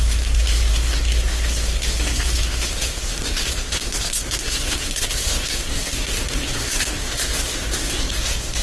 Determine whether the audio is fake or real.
fake